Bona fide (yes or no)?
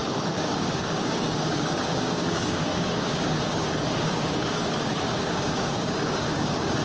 no